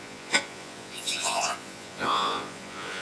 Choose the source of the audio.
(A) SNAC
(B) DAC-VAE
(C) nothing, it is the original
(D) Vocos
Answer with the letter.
D